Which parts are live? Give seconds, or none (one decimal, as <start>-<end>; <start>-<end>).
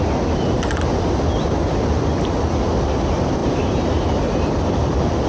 0.0-3.4; 4.6-5.3